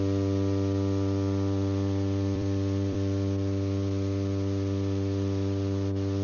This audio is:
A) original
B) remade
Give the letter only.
B